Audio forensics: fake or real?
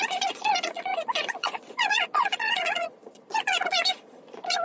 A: fake